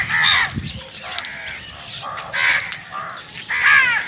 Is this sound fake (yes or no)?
no